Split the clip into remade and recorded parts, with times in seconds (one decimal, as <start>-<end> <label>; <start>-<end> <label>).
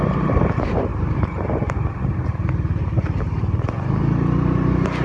0.0-0.9 recorded; 0.9-2.5 remade; 2.5-5.0 recorded